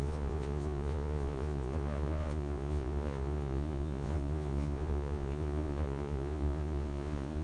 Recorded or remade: remade